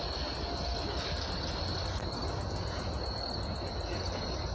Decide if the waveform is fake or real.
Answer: real